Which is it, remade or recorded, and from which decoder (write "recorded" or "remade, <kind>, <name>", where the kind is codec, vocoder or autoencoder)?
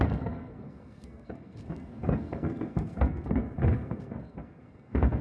remade, codec, SNAC